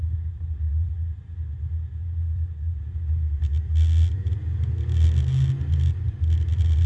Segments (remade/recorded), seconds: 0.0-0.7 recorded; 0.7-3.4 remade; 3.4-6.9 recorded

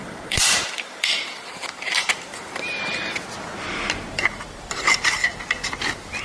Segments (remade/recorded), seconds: 0.0-2.3 remade; 2.3-4.1 recorded; 4.1-5.3 remade; 5.3-6.2 recorded

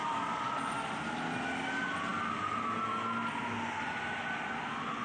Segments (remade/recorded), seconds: 0.0-5.0 recorded

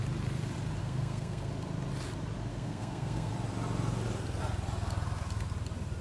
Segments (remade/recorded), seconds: 0.0-0.8 recorded; 0.8-1.5 remade; 1.5-2.5 recorded; 2.5-3.3 remade; 3.3-6.0 recorded

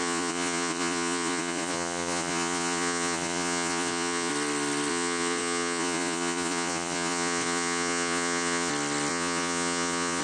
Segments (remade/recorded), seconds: 0.0-4.3 remade; 4.3-4.9 recorded; 4.9-8.7 remade; 8.7-9.1 recorded; 9.1-10.2 remade

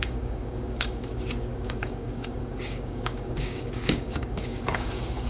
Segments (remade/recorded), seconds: 0.0-5.3 remade

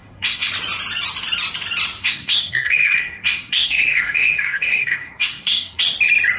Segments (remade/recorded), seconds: 0.0-0.5 remade; 0.5-2.0 recorded; 2.0-5.8 remade; 5.8-6.4 recorded

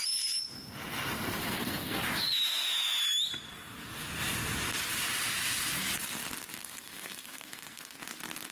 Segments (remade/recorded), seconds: 0.0-1.4 recorded; 1.4-2.0 remade; 2.0-6.6 recorded; 6.6-8.0 remade; 8.0-8.5 recorded